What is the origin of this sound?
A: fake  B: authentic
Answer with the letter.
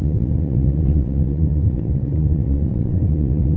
A